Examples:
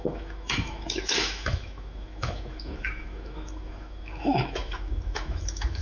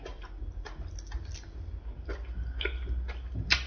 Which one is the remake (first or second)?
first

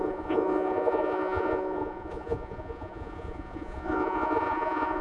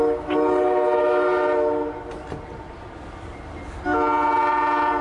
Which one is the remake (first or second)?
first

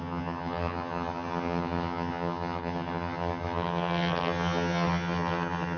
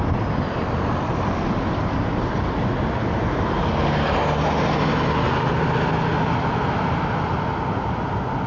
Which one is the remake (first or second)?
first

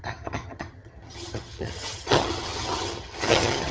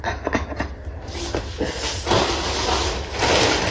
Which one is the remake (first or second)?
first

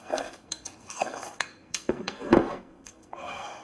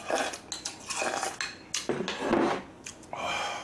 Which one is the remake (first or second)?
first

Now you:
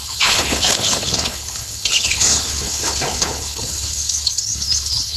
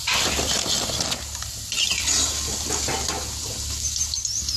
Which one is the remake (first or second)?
first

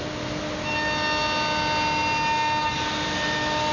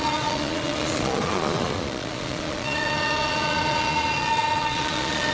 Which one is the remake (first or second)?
second